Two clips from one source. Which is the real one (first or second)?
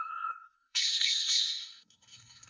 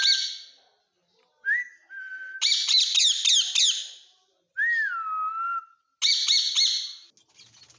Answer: second